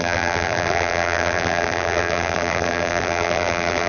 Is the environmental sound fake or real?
fake